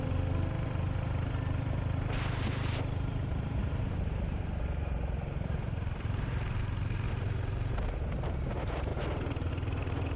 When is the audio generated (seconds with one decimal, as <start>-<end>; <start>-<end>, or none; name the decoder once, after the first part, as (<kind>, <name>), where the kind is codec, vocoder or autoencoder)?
3.6-6.6 (vocoder, BigVGAN v2)